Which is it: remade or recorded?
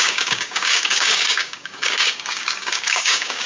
remade